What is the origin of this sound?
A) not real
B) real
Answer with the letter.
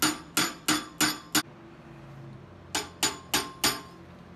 B